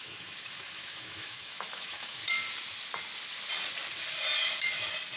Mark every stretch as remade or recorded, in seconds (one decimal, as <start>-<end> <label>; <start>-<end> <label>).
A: 0.0-2.2 remade; 2.2-5.2 recorded